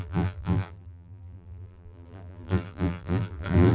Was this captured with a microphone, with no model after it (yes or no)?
no